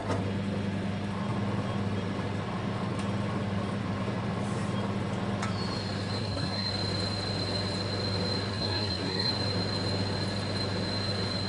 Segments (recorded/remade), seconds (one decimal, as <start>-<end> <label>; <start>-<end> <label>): 0.0-6.2 recorded; 6.2-6.7 remade; 6.7-8.5 recorded; 8.5-9.3 remade; 9.3-11.5 recorded